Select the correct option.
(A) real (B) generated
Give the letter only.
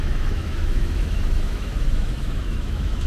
B